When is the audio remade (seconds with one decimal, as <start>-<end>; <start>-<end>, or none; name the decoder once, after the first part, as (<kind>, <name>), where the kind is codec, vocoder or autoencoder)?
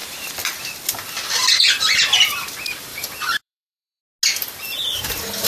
2.9-4.0 (vocoder, BigVGAN v2)